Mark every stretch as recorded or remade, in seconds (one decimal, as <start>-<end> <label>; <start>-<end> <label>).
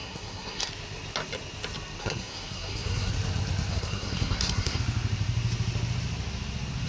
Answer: 0.0-0.7 remade; 0.7-2.0 recorded; 2.0-3.1 remade; 3.1-3.7 recorded; 3.7-4.8 remade; 4.8-6.9 recorded